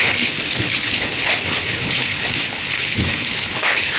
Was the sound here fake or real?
fake